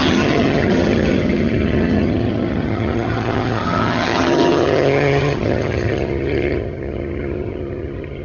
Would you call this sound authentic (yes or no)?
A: no